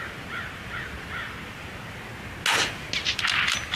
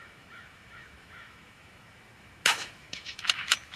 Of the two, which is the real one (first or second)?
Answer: first